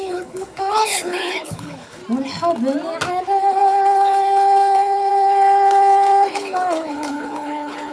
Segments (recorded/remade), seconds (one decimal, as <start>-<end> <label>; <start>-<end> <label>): 0.0-2.0 remade; 2.0-3.1 recorded; 3.1-7.9 remade